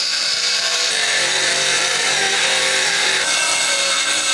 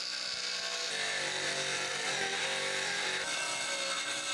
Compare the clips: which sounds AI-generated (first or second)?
first